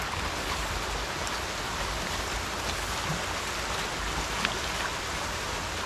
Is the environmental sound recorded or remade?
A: recorded